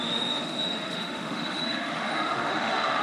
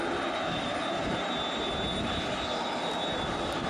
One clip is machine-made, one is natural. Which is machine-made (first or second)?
first